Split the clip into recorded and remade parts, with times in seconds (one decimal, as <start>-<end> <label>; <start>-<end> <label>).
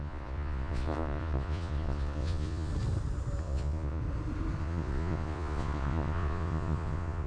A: 0.0-2.7 remade; 2.7-3.4 recorded; 3.4-4.0 remade; 4.0-4.6 recorded; 4.6-7.3 remade